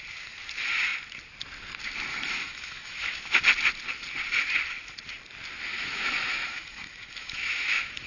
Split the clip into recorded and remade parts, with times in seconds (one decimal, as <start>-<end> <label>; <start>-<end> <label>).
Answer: 0.0-2.1 recorded; 2.1-3.4 remade; 3.4-5.7 recorded; 5.7-8.1 remade